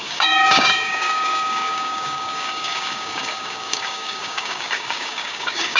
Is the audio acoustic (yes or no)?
no